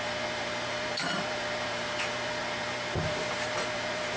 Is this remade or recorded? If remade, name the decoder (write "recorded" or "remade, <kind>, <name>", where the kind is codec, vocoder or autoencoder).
remade, vocoder, BigVGAN v2